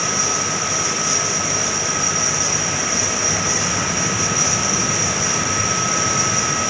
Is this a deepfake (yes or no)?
no